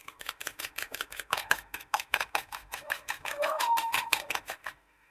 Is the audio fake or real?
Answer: fake